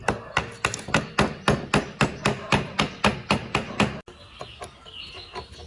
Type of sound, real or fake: real